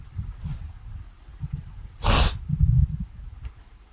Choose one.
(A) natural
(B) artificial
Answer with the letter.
A